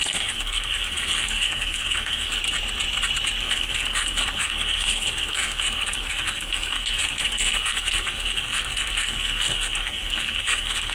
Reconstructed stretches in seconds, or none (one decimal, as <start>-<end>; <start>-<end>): 0.0-2.4; 3.4-10.9